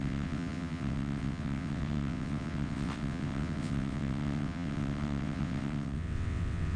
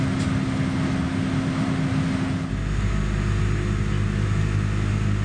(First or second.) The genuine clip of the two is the second